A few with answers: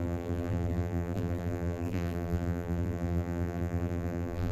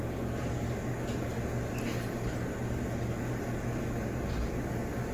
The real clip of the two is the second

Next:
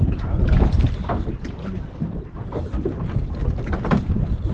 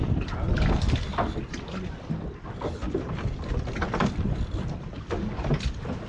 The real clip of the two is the second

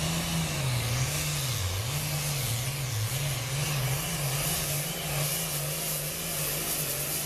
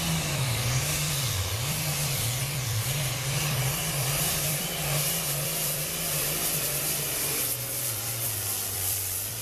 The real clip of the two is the first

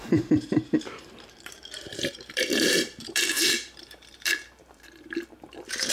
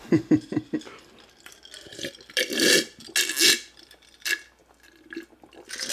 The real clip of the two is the second